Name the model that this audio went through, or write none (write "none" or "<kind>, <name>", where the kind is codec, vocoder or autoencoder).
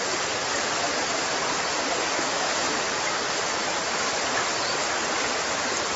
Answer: none